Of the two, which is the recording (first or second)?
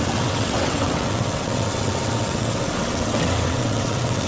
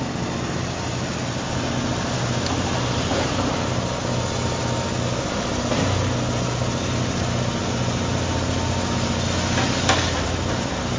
second